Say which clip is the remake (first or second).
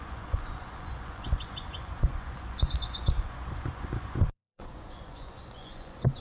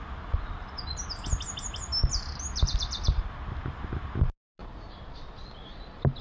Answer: first